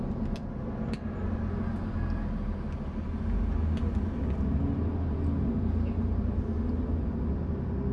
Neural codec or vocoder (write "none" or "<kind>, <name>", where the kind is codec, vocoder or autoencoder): none